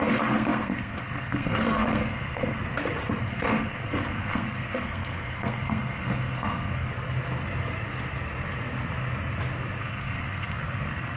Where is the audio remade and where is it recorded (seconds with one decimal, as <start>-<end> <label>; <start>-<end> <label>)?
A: 0.0-2.6 remade; 2.6-3.2 recorded; 3.2-6.9 remade; 6.9-9.8 recorded; 9.8-11.2 remade